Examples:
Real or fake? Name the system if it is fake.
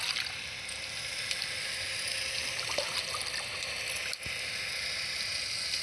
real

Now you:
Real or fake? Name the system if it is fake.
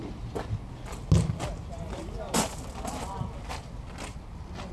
real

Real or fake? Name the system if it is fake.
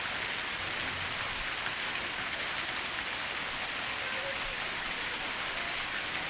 real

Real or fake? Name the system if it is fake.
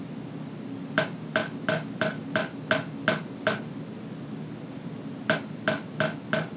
real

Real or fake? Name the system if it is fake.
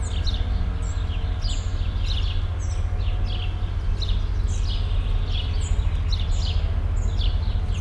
real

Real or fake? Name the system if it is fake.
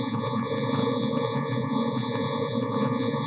fake, vocoder, Vocos